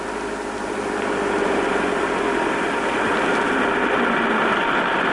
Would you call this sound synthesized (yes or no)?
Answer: no